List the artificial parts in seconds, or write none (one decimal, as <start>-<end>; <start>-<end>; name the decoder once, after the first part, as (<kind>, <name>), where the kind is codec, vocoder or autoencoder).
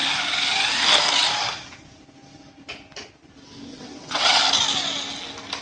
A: 3.7-4.4 (vocoder, WaveNeXt)